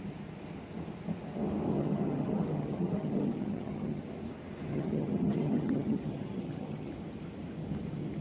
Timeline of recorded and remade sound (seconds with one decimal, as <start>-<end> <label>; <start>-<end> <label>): 0.0-1.7 recorded; 1.7-4.0 remade; 4.0-4.7 recorded; 4.7-6.9 remade; 6.9-8.2 recorded